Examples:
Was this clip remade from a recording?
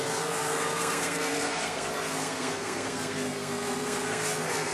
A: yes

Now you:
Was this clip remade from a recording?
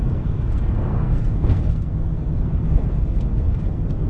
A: yes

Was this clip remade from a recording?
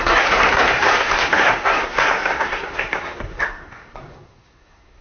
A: yes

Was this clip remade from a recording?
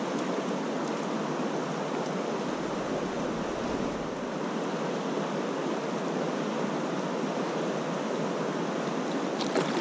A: no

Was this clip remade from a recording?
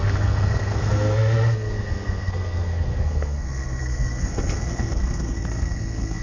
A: yes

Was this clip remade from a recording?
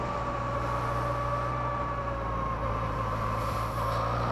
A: no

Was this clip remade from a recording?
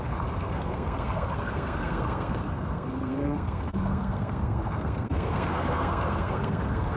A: yes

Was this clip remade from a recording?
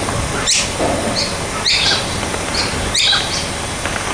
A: no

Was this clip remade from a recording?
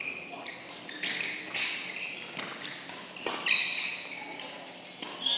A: no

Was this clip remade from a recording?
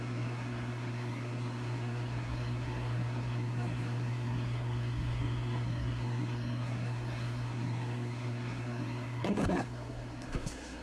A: yes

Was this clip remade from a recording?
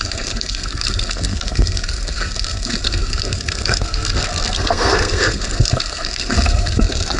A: yes